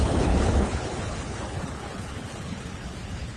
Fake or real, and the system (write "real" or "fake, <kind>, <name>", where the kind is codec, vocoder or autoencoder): fake, codec, HILCodec